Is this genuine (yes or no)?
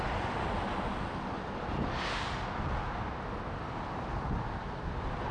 yes